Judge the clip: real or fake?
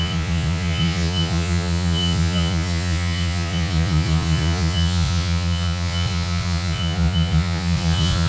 fake